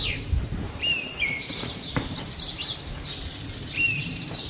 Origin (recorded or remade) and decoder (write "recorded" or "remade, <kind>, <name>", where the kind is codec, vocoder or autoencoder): remade, vocoder, BigVGAN v2